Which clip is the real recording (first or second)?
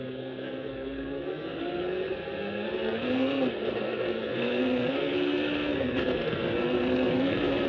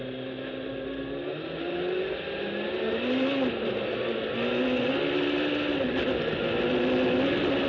second